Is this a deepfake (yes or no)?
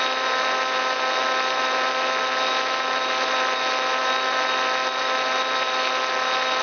no